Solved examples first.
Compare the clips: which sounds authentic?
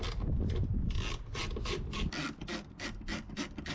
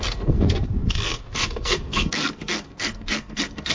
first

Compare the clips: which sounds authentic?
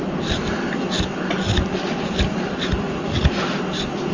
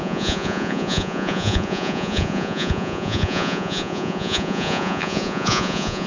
first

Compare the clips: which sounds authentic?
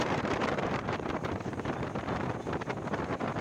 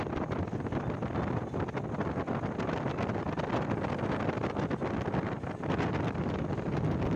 second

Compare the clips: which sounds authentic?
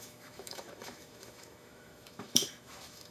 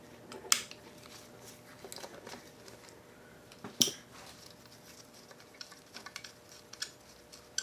second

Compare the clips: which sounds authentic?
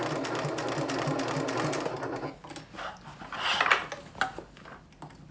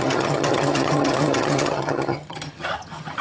first